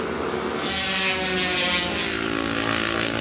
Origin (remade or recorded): recorded